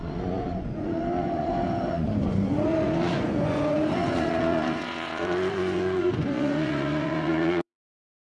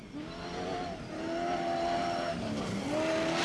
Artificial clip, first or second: first